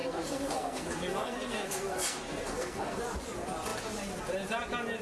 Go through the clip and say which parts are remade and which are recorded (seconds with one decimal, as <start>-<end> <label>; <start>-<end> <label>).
0.0-3.0 remade; 3.0-5.0 recorded